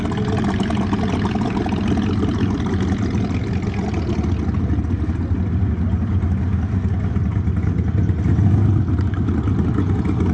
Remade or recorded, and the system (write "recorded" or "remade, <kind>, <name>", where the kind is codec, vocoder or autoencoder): recorded